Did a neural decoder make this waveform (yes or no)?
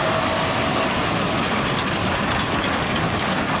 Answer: no